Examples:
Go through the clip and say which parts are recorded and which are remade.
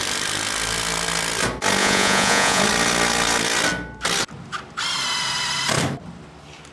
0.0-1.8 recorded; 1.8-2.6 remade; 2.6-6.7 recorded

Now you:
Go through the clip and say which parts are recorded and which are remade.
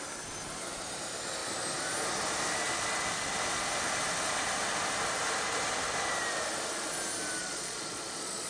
0.0-7.4 recorded; 7.4-8.5 remade